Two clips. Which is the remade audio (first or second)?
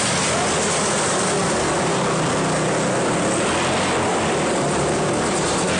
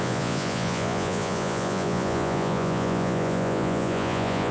second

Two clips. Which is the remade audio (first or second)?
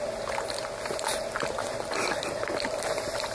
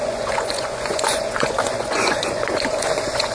second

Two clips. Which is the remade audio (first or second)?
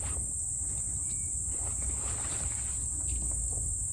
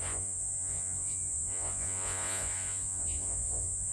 second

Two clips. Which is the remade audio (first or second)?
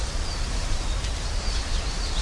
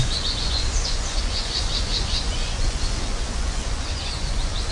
second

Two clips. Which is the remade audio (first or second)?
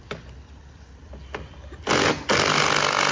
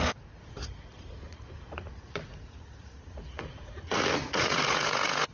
second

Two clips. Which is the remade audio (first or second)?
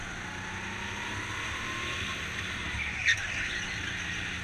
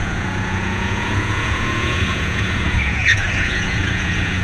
second